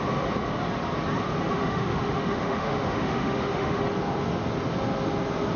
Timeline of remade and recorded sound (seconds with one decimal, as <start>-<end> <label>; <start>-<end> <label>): 0.0-1.5 recorded; 1.5-3.8 remade; 3.8-5.6 recorded